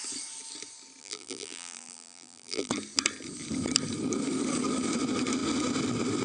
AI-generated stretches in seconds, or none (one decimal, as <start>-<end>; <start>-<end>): 1.0-2.7